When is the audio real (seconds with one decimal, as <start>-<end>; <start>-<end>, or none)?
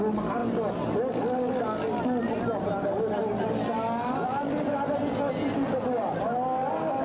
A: 0.0-7.0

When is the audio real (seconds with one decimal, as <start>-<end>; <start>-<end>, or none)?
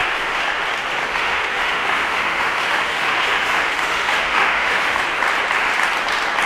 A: 0.6-1.1; 5.0-6.5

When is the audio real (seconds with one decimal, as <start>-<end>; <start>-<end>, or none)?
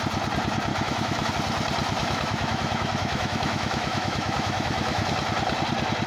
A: 0.0-0.7; 1.3-2.0; 5.1-6.1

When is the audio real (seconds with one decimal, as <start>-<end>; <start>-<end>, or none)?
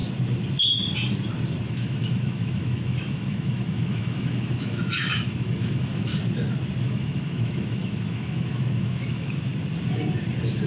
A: 0.0-1.6; 6.1-6.8; 9.5-10.7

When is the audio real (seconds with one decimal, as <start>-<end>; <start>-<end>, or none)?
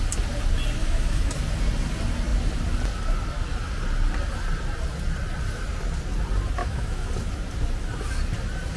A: 0.0-0.8; 1.3-6.6; 7.1-8.8